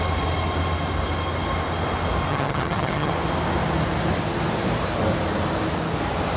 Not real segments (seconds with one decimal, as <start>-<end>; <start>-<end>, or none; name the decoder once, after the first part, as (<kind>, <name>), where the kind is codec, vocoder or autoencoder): 2.3-3.1 (vocoder, HiFi-GAN)